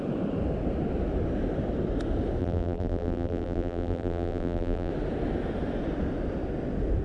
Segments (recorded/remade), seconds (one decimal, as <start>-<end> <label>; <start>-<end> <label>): 0.0-2.4 recorded; 2.4-4.9 remade; 4.9-7.0 recorded